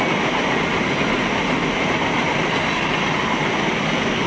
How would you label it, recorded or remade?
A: recorded